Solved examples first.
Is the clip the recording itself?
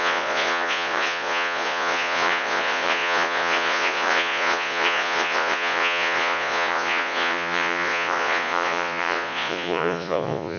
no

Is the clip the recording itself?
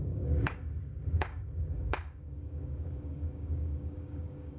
no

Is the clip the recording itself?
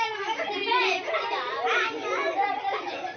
yes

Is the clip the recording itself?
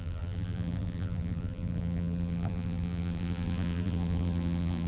no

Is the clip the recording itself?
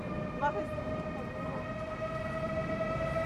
yes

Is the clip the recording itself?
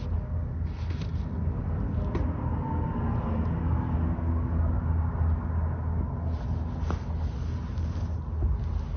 yes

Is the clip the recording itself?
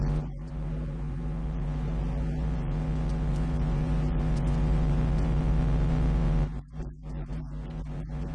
no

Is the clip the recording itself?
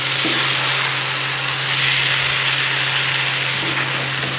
yes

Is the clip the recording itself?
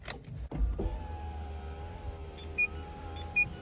yes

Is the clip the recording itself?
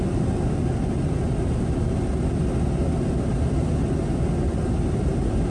yes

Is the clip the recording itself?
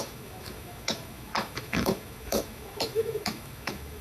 no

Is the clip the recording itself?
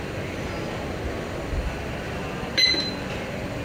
yes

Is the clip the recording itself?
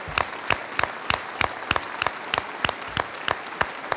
yes